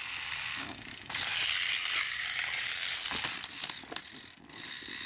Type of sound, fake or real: real